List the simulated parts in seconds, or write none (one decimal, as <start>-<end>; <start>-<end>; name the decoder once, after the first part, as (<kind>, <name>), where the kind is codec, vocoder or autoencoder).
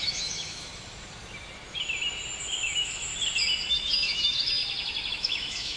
0.0-0.7 (autoencoder, DAC-VAE); 2.4-3.1; 3.7-4.6; 5.1-5.8